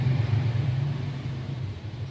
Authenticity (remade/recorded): remade